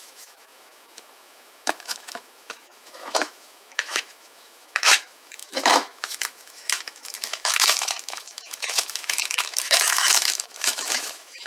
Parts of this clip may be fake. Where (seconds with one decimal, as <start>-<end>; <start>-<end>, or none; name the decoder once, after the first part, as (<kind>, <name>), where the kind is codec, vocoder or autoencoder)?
0.0-11.5 (autoencoder, DAC-VAE)